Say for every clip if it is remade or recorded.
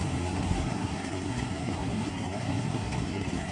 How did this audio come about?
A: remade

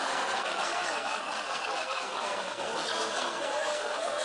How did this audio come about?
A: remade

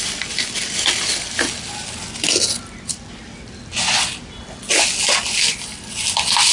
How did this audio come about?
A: recorded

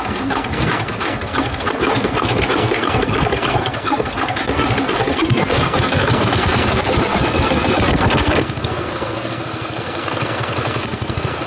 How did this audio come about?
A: remade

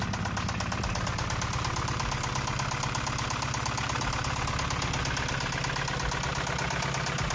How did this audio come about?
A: recorded